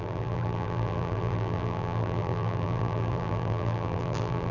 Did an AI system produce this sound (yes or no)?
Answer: yes